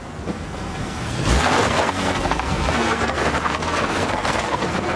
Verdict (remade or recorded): remade